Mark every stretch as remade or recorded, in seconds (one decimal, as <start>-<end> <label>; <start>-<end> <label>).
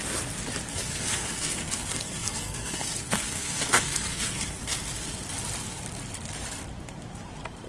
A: 0.0-0.7 recorded; 0.7-4.6 remade; 4.6-7.7 recorded